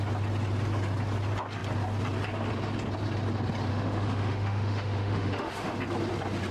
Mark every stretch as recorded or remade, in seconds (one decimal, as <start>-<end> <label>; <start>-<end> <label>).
0.0-3.7 recorded; 3.7-5.8 remade; 5.8-6.5 recorded